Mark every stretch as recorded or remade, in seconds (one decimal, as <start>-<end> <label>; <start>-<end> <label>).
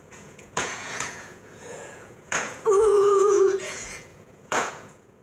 0.0-5.2 remade